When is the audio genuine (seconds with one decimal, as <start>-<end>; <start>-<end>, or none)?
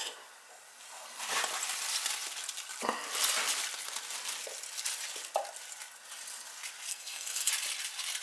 0.0-6.9; 7.5-8.2